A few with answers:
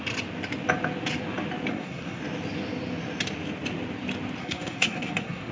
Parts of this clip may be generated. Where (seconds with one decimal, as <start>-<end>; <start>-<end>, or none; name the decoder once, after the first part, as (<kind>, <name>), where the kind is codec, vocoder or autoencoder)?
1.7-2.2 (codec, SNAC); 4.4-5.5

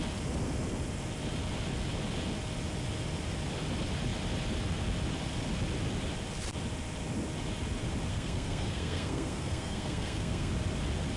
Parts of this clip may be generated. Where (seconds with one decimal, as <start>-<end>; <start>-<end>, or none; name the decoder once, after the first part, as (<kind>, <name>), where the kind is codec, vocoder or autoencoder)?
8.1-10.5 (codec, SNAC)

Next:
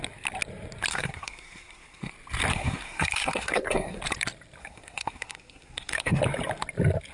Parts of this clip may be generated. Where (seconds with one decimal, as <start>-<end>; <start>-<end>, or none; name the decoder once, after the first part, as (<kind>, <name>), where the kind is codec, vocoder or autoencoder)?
0.9-2.1 (codec, SNAC); 2.5-4.0; 4.6-6.2

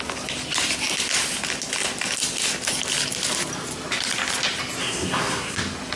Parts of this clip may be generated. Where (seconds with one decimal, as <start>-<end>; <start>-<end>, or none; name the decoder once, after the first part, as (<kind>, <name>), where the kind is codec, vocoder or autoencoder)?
4.8-5.6 (codec, SNAC)